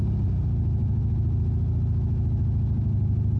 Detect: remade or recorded recorded